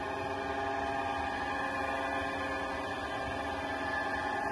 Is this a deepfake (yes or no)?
no